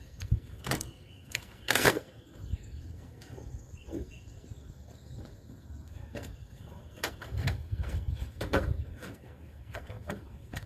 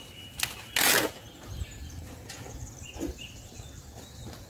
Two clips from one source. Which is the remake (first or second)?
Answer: first